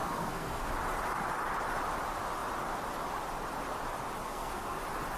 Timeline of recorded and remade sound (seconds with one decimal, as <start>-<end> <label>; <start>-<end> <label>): 0.0-0.7 remade; 0.7-4.2 recorded; 4.2-4.8 remade; 4.8-5.2 recorded